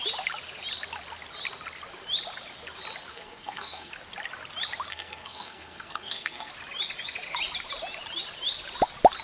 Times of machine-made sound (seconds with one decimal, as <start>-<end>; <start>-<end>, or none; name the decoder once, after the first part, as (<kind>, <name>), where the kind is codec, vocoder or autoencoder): 3.1-3.9 (codec, SNAC); 4.9-6.5